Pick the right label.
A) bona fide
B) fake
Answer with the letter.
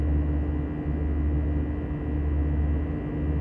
A